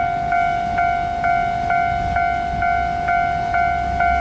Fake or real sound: real